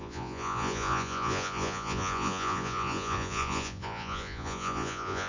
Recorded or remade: remade